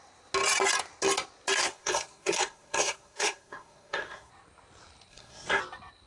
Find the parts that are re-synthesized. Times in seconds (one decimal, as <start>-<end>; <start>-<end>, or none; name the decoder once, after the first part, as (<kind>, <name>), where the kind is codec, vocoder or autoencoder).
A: 1.6-4.3 (codec, SNAC); 5.1-5.6